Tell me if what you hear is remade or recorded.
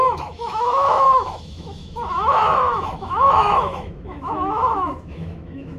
remade